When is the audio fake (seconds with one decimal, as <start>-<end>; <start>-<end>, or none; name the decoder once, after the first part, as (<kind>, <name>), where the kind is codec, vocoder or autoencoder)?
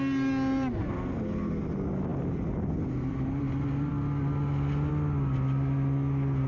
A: none